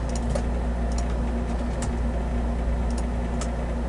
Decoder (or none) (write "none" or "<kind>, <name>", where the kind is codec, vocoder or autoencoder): none